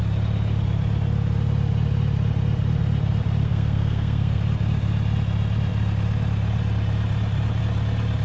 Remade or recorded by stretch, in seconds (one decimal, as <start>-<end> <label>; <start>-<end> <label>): 0.0-3.4 recorded; 3.4-4.4 remade; 4.4-8.2 recorded